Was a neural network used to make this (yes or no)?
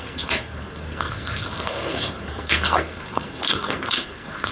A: yes